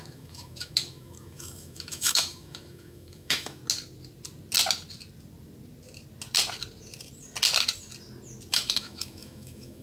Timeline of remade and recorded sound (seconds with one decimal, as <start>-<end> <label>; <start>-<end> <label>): 0.0-3.6 remade; 3.6-8.5 recorded; 8.5-9.8 remade